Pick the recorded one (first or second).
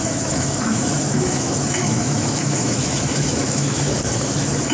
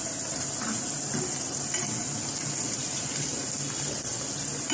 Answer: second